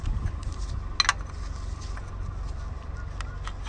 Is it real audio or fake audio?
real